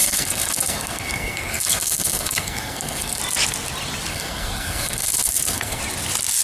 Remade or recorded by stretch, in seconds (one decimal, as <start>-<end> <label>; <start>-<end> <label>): 0.0-3.2 remade; 3.2-4.1 recorded; 4.1-5.8 remade; 5.8-6.4 recorded